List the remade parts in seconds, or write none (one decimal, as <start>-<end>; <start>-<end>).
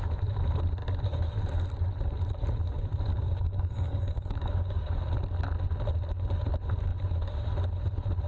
3.1-4.9